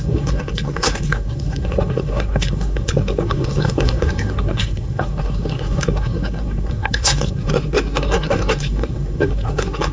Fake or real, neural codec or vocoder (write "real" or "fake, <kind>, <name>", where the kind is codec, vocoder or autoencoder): fake, codec, SNAC